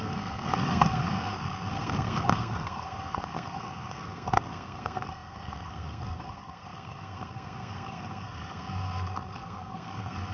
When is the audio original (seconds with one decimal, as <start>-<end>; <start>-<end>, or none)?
none